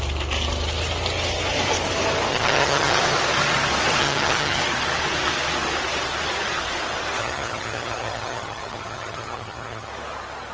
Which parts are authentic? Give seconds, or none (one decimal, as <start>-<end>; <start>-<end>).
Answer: 0.0-2.3; 3.0-4.0; 4.6-7.2; 9.9-10.5